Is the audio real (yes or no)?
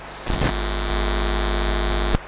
yes